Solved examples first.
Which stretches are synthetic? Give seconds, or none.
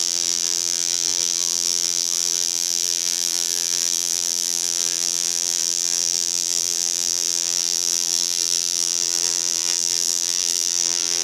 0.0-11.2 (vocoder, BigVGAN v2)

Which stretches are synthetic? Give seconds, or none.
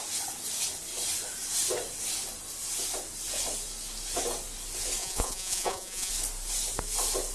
5.0-6.1 (vocoder, Vocos)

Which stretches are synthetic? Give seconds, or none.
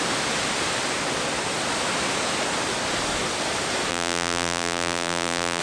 3.9-5.6 (vocoder, BigVGAN v2)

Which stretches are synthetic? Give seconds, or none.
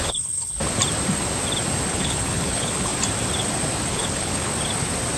0.0-0.6 (codec, HILCodec); 1.9-2.9; 3.9-4.5